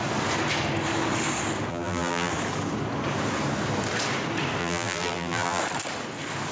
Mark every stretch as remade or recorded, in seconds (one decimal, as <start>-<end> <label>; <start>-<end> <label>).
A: 0.0-1.7 recorded; 1.7-2.3 remade; 2.3-4.6 recorded; 4.6-5.6 remade; 5.6-6.5 recorded

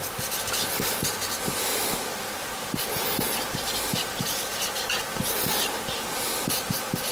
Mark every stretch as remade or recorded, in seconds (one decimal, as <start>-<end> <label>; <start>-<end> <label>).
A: 0.0-7.1 recorded

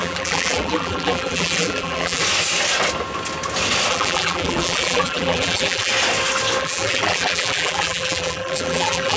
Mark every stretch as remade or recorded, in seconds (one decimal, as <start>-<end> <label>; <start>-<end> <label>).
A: 0.0-2.2 remade; 2.2-3.9 recorded; 3.9-5.9 remade; 5.9-6.6 recorded; 6.6-9.2 remade

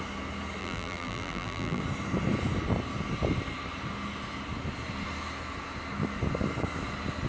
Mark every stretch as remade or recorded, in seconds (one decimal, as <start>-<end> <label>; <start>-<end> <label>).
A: 0.0-0.6 recorded; 0.6-1.8 remade; 1.8-7.3 recorded

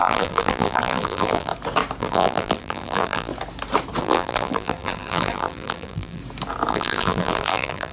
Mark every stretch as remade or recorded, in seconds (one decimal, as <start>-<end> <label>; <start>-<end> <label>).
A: 0.0-1.5 remade; 1.5-2.0 recorded; 2.0-3.3 remade; 3.3-4.0 recorded; 4.0-6.2 remade; 6.2-6.7 recorded; 6.7-7.9 remade